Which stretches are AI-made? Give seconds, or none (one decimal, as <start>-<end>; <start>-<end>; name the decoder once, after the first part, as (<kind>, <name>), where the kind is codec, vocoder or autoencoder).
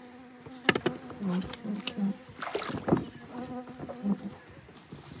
none